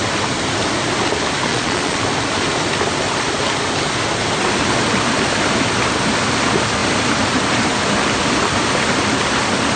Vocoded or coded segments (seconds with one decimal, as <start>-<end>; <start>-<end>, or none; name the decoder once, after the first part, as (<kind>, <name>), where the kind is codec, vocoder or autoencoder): 1.5-2.0 (vocoder, Vocos)